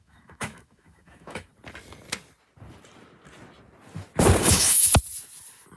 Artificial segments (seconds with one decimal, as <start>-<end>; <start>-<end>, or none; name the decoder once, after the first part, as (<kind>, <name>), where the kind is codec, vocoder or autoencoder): 0.0-1.5 (autoencoder, DAC-VAE); 4.4-4.9